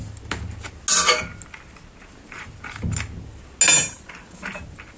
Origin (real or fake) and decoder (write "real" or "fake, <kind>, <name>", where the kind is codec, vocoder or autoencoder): real